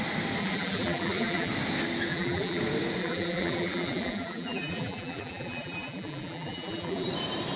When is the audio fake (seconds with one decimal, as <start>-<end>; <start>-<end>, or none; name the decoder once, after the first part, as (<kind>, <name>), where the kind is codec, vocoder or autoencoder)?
0.4-1.5 (vocoder, BigVGAN v2); 2.1-2.6; 3.0-7.1